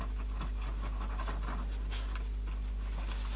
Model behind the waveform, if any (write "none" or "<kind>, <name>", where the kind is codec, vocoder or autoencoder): none